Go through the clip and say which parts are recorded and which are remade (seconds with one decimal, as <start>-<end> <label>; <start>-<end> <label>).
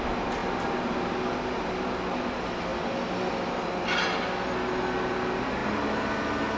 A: 0.0-6.6 recorded